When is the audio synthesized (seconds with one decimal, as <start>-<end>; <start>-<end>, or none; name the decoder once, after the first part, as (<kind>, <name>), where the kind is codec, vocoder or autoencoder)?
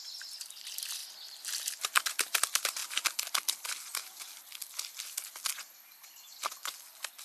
none